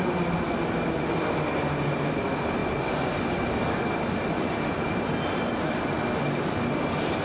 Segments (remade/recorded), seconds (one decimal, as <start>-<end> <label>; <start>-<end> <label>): 0.0-7.2 recorded